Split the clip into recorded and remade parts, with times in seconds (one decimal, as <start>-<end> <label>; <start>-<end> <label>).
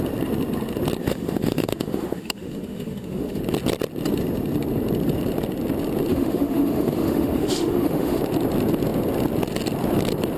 0.0-1.0 recorded; 1.0-3.4 remade; 3.4-6.1 recorded; 6.1-8.2 remade; 8.2-10.4 recorded